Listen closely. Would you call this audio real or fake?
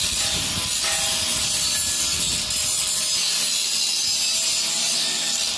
real